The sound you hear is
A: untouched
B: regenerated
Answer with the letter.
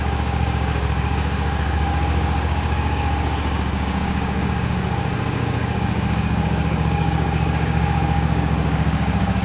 B